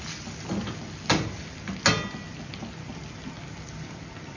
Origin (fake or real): real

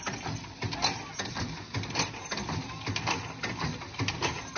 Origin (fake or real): real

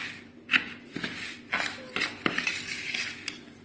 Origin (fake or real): real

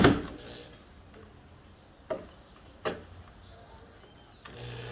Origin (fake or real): real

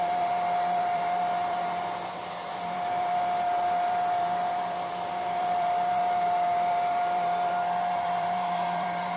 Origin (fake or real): fake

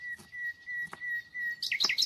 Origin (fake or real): real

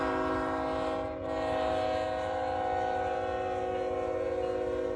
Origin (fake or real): real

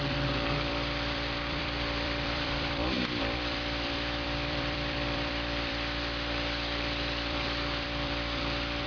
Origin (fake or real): fake